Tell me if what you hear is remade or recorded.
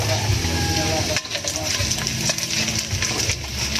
recorded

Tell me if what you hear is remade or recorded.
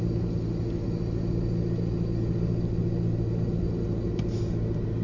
recorded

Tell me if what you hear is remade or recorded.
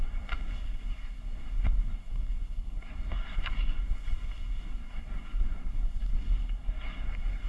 remade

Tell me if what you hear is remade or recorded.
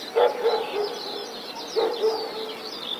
recorded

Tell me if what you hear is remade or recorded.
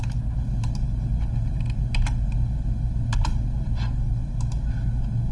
recorded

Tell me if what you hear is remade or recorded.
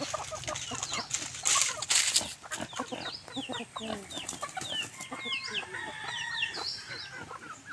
recorded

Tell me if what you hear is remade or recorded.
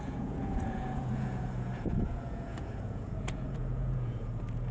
remade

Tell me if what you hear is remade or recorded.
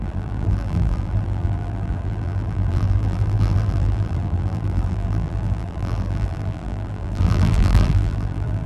remade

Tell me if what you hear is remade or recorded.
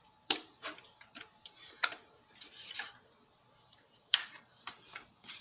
remade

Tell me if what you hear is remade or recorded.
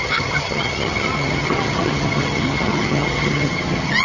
remade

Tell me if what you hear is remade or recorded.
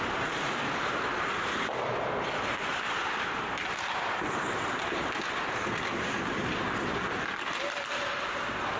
recorded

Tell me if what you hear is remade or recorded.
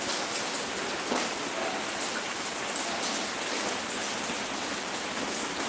recorded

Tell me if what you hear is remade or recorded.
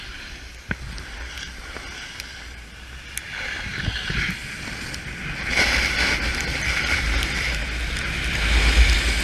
recorded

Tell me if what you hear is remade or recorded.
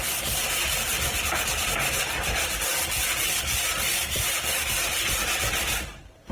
recorded